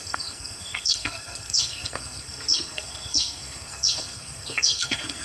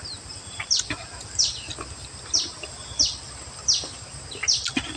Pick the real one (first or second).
second